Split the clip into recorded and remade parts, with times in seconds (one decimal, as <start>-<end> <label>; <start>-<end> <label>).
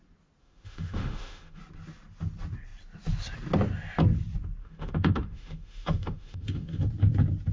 0.0-0.4 recorded; 0.4-1.6 remade; 1.6-4.6 recorded; 4.6-6.9 remade; 6.9-7.5 recorded